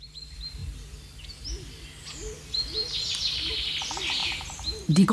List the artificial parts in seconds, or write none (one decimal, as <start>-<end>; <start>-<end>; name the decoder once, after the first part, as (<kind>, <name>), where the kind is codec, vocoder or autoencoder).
4.2-5.1 (vocoder, BigVGAN v2)